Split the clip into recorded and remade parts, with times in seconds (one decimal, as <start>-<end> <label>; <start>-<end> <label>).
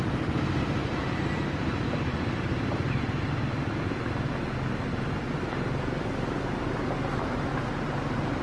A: 0.0-0.8 recorded; 0.8-3.0 remade; 3.0-7.5 recorded; 7.5-8.4 remade